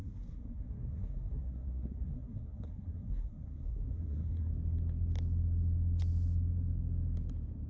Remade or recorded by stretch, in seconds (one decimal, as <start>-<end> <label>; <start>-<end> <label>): 0.0-4.5 remade; 4.5-7.7 recorded